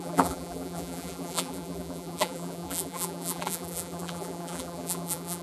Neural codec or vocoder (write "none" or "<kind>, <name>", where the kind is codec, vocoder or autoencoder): vocoder, BigVGAN v2